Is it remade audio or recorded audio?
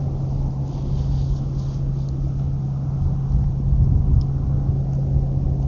recorded